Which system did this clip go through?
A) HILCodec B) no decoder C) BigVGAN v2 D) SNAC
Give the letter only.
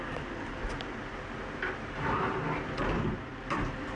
C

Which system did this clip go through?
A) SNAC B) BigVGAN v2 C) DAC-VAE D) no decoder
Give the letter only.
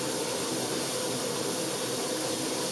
D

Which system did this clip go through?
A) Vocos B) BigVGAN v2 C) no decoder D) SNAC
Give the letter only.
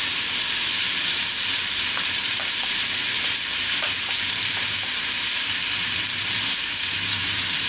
B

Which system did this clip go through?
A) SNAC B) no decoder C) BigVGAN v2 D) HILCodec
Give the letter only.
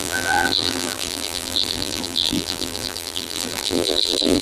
C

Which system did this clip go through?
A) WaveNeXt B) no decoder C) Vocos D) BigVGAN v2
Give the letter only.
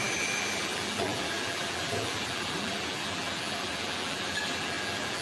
D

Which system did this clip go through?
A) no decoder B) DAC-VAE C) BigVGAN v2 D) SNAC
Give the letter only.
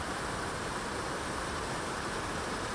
A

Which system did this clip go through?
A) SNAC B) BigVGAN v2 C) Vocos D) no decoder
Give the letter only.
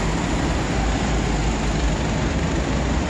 D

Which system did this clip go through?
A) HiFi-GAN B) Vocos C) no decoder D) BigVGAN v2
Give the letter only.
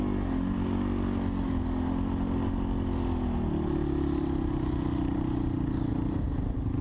C